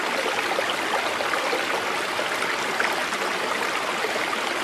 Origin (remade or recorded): recorded